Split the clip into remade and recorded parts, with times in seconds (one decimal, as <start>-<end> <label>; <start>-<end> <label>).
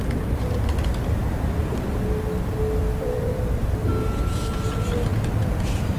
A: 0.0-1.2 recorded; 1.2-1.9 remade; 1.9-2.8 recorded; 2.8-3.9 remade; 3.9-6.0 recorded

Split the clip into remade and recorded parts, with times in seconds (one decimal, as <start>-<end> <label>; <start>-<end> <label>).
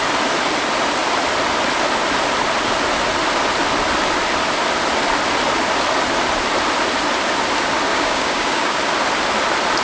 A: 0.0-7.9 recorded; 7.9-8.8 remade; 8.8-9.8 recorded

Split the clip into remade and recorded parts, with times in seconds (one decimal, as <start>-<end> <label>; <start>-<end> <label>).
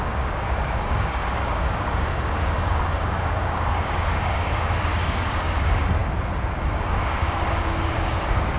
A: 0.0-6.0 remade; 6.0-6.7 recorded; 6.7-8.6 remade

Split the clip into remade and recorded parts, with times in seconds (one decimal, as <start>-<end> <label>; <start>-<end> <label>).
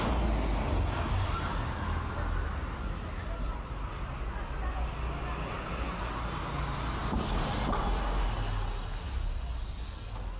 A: 0.0-10.4 recorded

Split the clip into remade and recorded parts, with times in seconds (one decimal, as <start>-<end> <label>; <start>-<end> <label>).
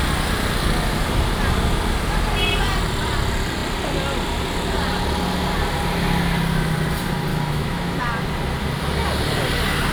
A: 0.0-7.3 recorded; 7.3-8.0 remade; 8.0-9.9 recorded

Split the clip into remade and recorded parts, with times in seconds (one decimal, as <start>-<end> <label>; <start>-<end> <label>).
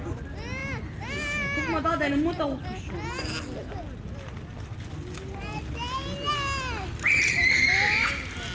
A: 0.0-8.5 recorded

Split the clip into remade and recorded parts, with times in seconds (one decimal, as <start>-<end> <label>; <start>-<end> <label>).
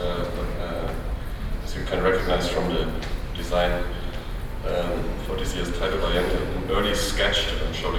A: 0.0-1.3 remade; 1.3-8.0 recorded